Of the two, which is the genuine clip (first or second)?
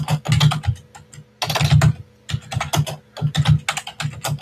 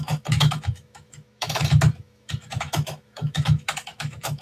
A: first